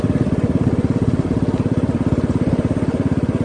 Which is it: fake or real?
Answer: fake